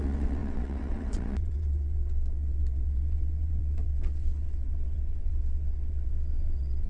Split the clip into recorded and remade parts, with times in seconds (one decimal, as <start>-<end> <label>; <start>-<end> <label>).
0.0-6.9 remade